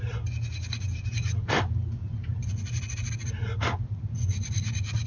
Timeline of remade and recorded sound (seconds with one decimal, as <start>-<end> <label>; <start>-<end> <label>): 0.0-5.1 recorded